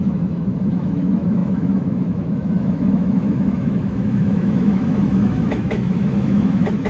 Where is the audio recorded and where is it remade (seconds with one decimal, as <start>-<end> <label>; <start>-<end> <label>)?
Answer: 0.0-6.9 remade